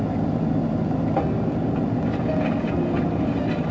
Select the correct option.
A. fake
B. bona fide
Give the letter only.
B